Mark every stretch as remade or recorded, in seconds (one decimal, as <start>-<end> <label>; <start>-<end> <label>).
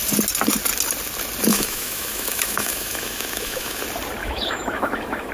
0.0-1.5 recorded; 1.5-3.8 remade; 3.8-4.2 recorded; 4.2-5.3 remade